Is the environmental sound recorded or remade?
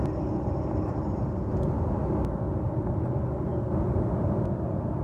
recorded